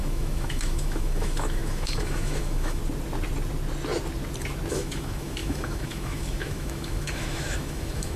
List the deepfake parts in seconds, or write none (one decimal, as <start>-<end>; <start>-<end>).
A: 0.0-2.8; 4.7-8.2